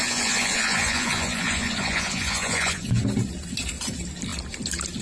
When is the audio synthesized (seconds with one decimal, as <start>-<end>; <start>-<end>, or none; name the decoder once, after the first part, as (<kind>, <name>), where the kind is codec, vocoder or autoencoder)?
0.0-3.0 (vocoder, Vocos)